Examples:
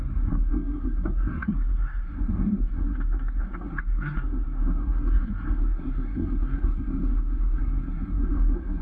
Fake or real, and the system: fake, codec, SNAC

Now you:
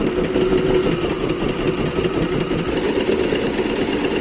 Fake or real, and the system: real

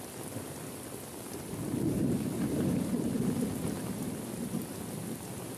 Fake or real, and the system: real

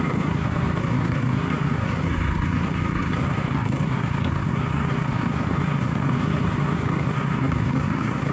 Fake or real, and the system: fake, codec, SNAC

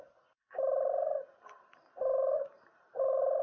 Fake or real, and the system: real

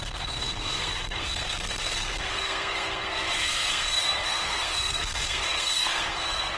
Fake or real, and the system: fake, codec, SNAC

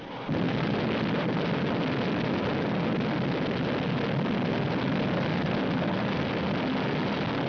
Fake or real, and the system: real